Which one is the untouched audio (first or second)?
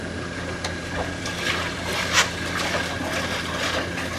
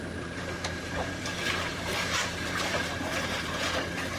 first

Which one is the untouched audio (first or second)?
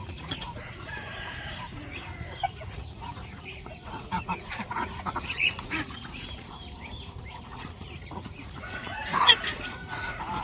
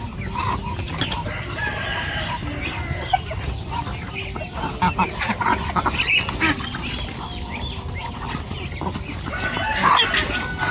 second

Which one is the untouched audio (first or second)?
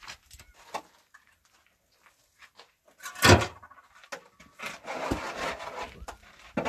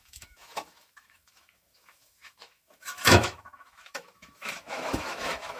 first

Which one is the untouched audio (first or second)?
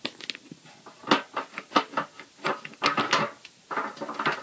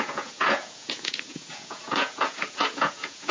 first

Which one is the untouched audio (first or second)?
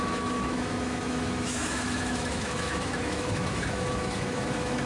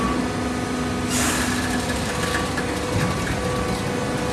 second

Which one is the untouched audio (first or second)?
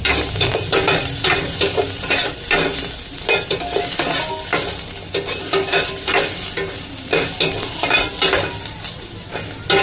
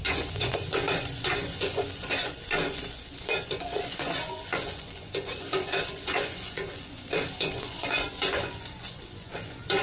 first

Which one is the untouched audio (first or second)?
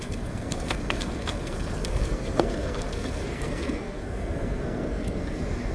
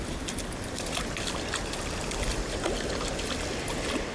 second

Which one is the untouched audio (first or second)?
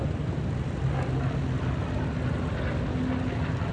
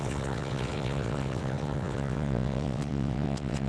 first